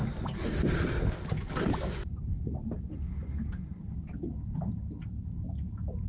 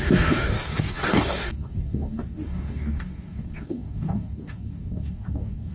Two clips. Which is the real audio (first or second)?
first